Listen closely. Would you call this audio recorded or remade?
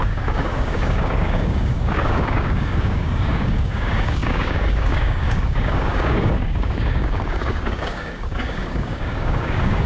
remade